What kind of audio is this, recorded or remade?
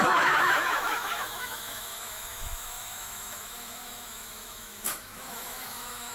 remade